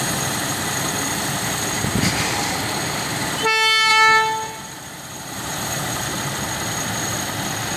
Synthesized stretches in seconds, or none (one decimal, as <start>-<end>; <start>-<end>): 3.9-6.2